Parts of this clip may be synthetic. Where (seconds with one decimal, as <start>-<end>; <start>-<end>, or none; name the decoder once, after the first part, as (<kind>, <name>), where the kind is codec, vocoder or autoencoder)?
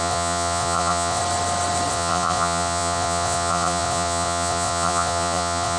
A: 0.0-1.2 (vocoder, Vocos); 1.9-5.8